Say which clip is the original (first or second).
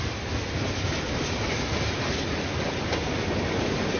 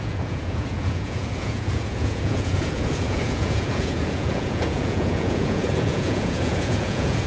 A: first